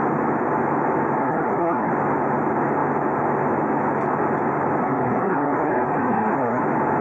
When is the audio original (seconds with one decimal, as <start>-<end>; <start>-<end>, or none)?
0.0-1.2; 1.9-4.8; 6.6-7.0

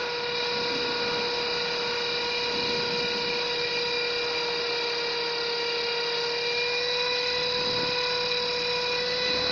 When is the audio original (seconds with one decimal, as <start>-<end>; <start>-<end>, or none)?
0.0-9.5

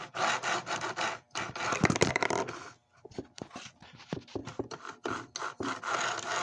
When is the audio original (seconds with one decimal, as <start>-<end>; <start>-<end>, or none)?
0.0-6.4